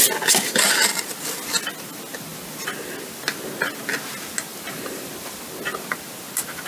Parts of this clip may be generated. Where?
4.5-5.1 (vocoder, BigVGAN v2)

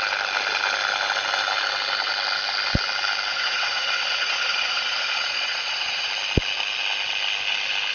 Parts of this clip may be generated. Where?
3.3-6.1 (vocoder, Vocos)

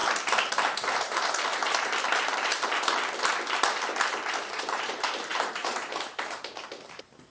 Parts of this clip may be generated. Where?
0.5-2.5 (vocoder, BigVGAN v2); 4.4-7.3

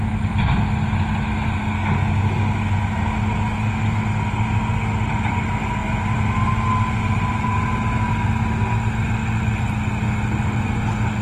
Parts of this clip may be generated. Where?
none

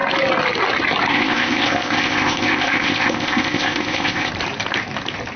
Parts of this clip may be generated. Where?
1.1-4.3 (codec, ZipCodec)